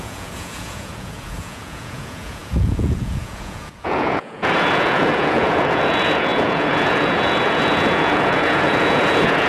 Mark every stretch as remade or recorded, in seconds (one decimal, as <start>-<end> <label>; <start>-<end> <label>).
0.0-9.5 remade